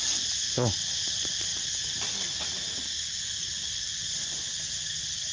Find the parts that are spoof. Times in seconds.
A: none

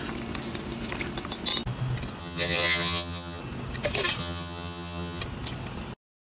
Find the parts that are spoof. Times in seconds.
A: 2.2-3.4; 4.2-5.2

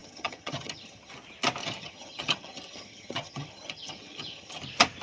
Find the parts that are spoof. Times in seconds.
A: 0.0-1.1; 1.6-4.6

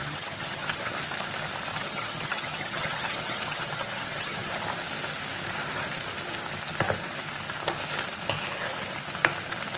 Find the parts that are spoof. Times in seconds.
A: 0.0-0.9; 1.7-4.5

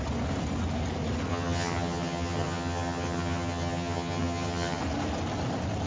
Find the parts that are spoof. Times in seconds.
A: 1.3-4.8

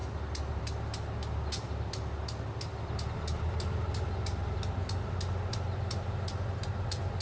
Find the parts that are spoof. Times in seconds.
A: none